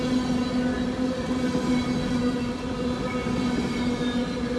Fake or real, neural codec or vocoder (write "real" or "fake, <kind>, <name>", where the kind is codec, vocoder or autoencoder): real